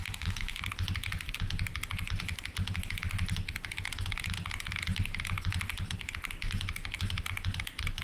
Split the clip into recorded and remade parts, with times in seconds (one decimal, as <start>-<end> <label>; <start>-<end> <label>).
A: 0.0-0.6 remade; 0.6-8.0 recorded